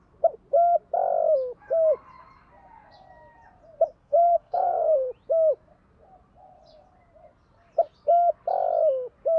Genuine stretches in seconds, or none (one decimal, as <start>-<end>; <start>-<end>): 0.0-4.0; 5.1-9.4